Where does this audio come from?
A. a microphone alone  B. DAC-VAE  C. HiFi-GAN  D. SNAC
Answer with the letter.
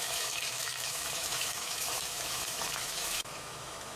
B